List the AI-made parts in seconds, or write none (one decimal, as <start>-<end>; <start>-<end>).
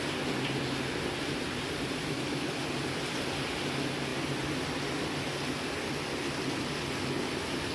2.0-2.6